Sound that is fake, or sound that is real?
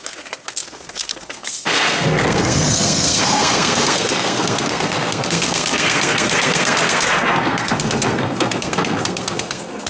fake